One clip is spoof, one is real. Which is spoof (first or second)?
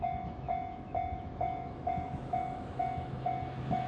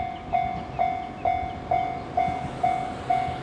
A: first